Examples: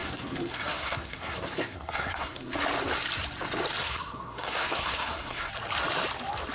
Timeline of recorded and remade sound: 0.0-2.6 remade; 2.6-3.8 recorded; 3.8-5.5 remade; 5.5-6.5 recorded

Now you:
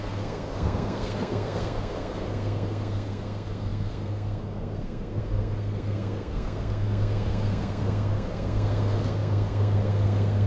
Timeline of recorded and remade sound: 0.0-10.5 remade

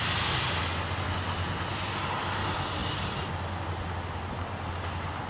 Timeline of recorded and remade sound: 0.0-5.3 recorded

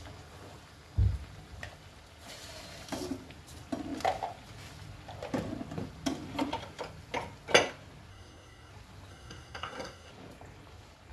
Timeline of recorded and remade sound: 0.0-8.1 recorded; 8.1-8.7 remade; 8.7-9.1 recorded; 9.1-10.1 remade; 10.1-11.1 recorded

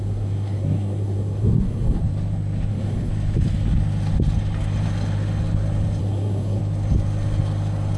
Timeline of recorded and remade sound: 0.0-2.0 remade; 2.0-2.7 recorded; 2.7-3.1 remade; 3.1-6.0 recorded; 6.0-6.6 remade; 6.6-8.0 recorded

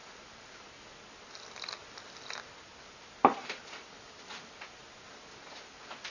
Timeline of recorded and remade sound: 0.0-6.1 recorded

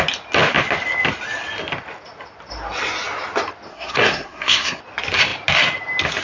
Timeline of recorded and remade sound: 0.0-3.7 recorded; 3.7-4.8 remade; 4.8-6.2 recorded

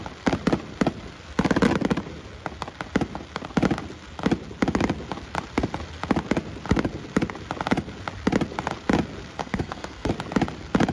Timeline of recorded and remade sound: 0.0-9.4 recorded; 9.4-10.1 remade; 10.1-10.9 recorded